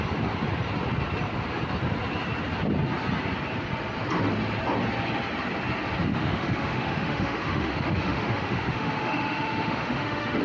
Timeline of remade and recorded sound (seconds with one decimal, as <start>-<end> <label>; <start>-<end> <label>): 0.0-6.1 recorded; 6.1-10.4 remade